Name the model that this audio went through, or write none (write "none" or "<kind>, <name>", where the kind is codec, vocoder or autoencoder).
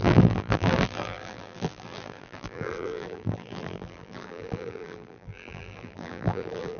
vocoder, BigVGAN v2